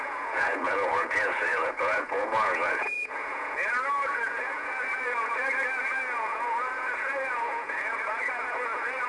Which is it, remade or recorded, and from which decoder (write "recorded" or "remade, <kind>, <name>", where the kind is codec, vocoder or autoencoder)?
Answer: remade, vocoder, Vocos